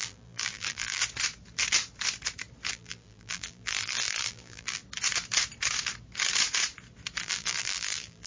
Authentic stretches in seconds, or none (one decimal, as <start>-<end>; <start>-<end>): 1.0-2.7; 4.8-7.2